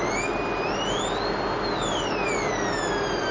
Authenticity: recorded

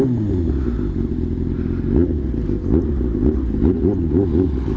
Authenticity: recorded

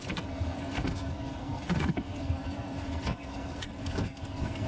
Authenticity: remade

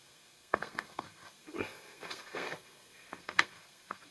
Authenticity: remade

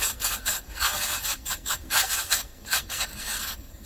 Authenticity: remade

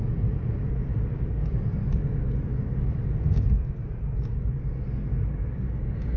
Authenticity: recorded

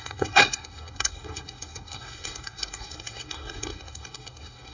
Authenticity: remade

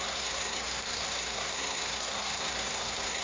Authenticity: remade